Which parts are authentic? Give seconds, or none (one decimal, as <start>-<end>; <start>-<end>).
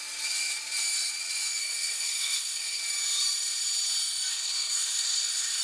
0.0-1.6; 2.8-4.3